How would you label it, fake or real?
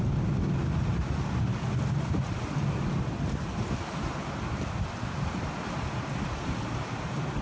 real